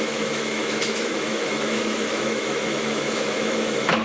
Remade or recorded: remade